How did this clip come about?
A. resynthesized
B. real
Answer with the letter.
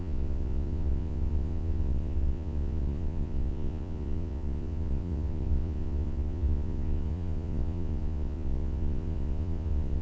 A